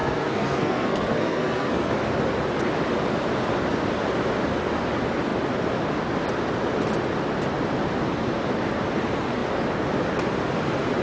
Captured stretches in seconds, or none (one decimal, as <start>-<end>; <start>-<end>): 1.9-11.0